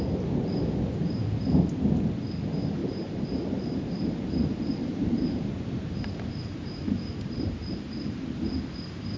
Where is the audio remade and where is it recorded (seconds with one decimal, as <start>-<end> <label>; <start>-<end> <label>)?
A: 0.0-2.8 recorded; 2.8-7.8 remade; 7.8-9.2 recorded